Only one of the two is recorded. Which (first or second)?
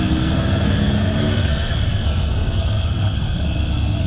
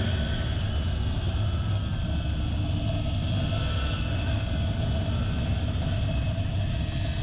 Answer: second